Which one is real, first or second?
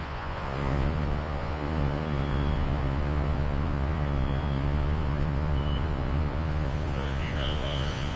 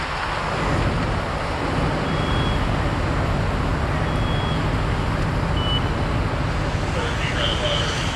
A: second